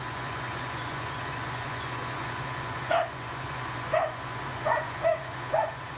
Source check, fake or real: fake